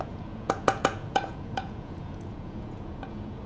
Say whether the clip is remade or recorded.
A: remade